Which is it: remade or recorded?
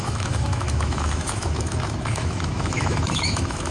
remade